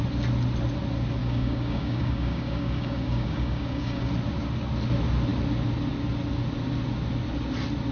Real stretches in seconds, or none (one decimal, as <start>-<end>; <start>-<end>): 0.0-1.2; 4.1-7.9